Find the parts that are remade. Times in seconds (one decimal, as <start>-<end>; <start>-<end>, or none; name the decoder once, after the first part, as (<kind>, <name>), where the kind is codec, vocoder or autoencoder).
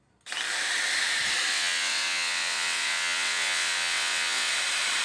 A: 1.5-4.5 (vocoder, WaveNeXt)